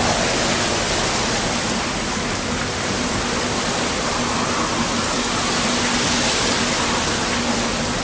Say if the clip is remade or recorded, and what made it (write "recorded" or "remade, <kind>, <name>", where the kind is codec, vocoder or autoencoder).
recorded